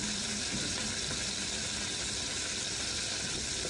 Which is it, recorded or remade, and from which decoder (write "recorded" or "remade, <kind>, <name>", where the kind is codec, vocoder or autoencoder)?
recorded